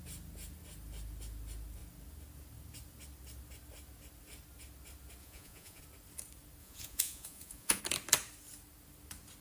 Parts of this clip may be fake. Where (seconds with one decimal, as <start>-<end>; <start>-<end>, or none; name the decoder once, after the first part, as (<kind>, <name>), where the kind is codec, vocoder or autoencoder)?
5.2-5.8 (vocoder, Vocos); 6.6-7.8